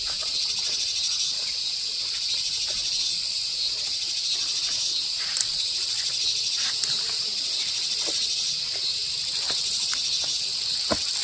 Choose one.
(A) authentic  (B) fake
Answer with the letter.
A